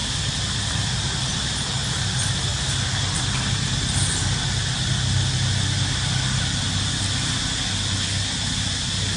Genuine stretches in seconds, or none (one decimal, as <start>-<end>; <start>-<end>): 0.0-1.8; 7.0-9.2